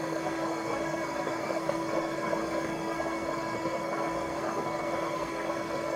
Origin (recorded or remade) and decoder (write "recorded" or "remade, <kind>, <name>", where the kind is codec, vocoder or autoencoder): remade, codec, SNAC